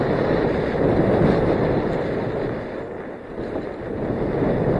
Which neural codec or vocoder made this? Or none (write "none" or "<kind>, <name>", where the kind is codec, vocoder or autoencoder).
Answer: none